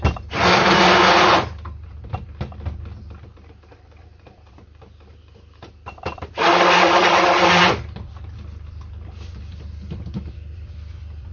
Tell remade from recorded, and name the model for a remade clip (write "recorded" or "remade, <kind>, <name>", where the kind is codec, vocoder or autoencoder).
remade, vocoder, BigVGAN v2